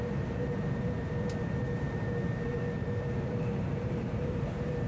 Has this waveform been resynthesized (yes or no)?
yes